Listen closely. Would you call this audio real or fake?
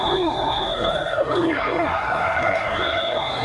fake